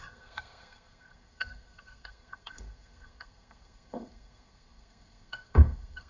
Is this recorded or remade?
remade